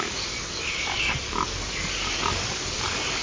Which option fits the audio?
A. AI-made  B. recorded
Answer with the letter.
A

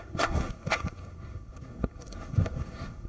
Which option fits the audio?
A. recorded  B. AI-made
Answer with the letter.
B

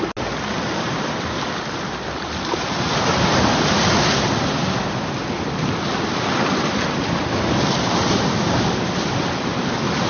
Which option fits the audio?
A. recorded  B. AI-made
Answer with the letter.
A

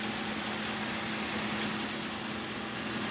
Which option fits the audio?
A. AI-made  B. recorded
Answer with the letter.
B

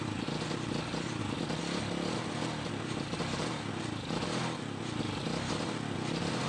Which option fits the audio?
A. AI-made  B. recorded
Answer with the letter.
B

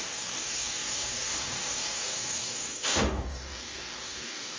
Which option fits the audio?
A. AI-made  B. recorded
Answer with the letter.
A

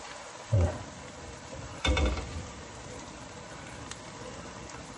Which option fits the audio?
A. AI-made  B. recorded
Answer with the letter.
B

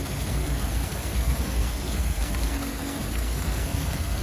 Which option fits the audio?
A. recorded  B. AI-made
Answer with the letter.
B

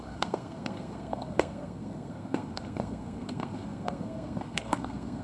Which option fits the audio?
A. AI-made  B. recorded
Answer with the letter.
A